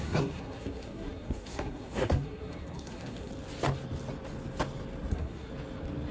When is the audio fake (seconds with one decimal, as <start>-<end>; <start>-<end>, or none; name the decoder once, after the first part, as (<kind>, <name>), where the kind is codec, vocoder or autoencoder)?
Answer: 0.0-3.3 (codec, SNAC); 5.1-5.5